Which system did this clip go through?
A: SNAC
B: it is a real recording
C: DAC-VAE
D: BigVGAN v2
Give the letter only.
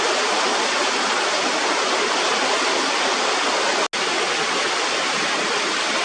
B